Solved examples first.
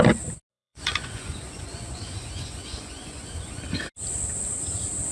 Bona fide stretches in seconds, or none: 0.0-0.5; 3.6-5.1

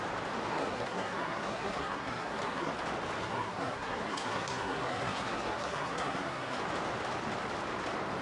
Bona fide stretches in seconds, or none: 0.0-0.5; 2.7-3.2; 6.6-8.2

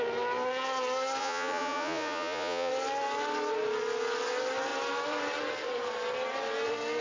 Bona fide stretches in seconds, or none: 0.0-1.2; 2.7-7.0

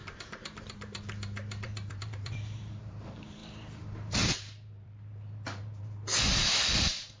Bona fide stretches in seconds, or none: none